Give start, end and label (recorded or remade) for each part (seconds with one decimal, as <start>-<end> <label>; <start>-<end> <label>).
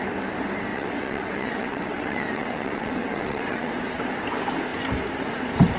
0.0-0.7 recorded; 0.7-3.7 remade; 3.7-5.8 recorded